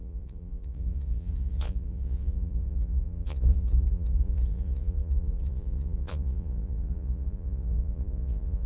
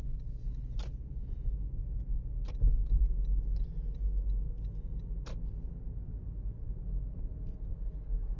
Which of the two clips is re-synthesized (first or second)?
first